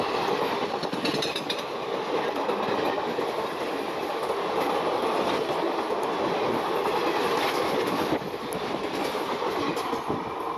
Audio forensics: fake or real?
real